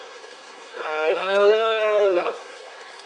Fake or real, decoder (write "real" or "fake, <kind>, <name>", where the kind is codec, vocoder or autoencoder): fake, codec, SNAC